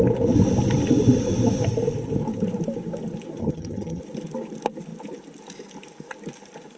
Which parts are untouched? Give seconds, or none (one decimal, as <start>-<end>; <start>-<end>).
0.0-3.4; 4.0-6.8